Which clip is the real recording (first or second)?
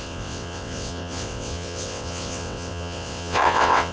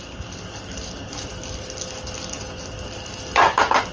second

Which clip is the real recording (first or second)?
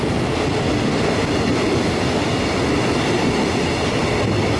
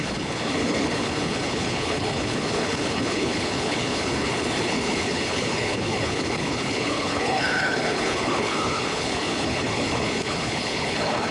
first